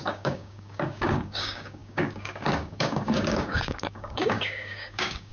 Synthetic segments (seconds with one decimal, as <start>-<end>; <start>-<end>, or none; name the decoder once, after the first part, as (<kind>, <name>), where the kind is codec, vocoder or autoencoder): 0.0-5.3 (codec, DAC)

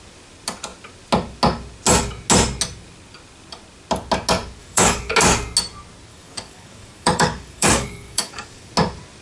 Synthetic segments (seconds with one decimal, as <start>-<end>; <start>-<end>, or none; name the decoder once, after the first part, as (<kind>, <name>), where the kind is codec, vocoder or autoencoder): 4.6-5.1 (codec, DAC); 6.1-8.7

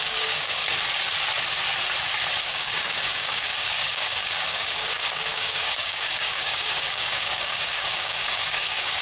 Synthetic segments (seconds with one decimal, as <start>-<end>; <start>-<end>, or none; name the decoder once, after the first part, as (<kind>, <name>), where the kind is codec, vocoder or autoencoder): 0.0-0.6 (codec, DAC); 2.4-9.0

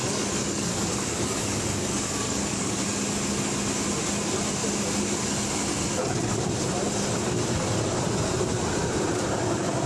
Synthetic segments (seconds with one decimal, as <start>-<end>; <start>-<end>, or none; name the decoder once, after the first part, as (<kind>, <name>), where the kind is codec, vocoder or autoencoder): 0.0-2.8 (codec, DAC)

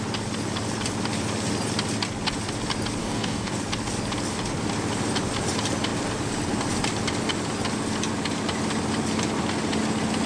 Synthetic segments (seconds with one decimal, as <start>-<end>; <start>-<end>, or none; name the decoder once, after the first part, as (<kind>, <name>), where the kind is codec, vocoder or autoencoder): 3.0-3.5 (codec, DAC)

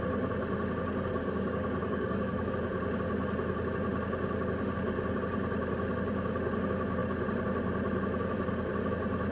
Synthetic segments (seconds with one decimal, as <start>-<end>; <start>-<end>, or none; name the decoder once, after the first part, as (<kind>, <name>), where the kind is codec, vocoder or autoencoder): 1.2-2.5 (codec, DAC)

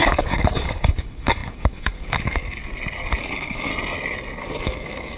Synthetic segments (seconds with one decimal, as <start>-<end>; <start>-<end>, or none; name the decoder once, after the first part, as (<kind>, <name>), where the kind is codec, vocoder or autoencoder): 0.0-2.6 (codec, DAC); 3.2-3.7; 4.4-5.2